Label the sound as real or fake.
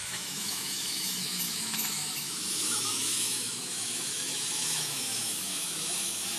fake